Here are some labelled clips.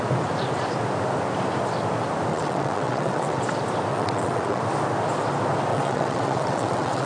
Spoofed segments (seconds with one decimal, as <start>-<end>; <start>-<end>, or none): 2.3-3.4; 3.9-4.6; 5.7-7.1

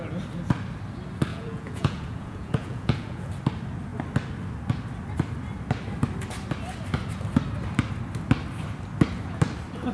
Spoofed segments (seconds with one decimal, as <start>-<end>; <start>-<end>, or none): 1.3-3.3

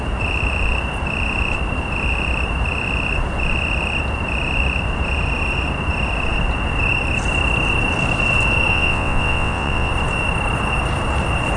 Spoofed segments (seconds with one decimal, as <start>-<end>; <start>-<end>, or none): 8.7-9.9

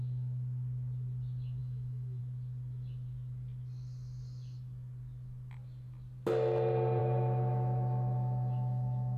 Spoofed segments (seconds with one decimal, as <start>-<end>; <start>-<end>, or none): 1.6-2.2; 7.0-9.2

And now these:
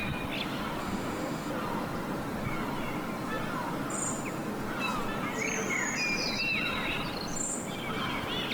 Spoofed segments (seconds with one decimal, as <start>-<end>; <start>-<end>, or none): 0.8-1.5

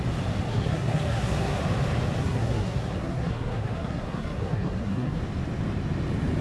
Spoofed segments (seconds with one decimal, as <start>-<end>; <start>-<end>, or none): 0.5-1.6; 2.2-5.2

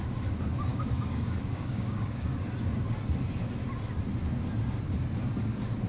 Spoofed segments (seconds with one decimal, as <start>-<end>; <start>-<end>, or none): 0.7-2.3

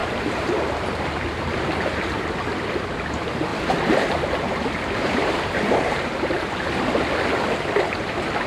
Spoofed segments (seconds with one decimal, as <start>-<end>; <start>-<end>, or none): 0.0-2.1; 3.5-6.5